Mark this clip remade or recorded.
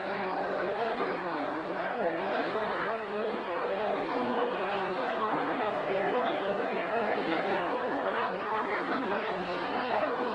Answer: remade